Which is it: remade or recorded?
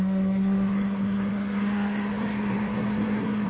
remade